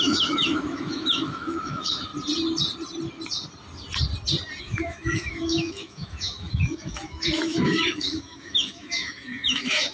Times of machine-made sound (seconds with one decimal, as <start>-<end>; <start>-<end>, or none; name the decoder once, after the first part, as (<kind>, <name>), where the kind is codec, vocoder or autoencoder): 0.0-2.1 (autoencoder, DAC-VAE); 4.6-9.9